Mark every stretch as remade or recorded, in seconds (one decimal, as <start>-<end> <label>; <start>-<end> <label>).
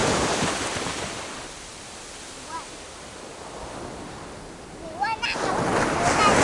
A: 0.0-6.4 recorded